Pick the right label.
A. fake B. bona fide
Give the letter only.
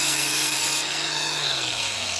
A